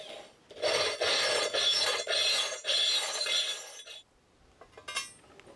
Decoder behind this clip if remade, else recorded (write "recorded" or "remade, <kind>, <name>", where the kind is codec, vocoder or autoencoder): recorded